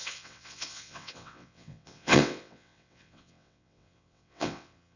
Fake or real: fake